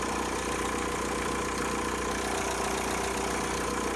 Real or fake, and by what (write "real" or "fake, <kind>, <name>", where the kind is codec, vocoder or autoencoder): real